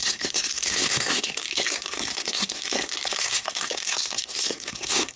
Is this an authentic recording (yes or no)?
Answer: no